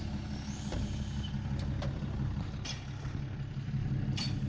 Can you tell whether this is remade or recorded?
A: recorded